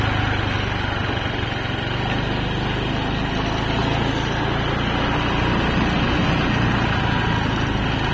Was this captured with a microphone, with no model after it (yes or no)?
yes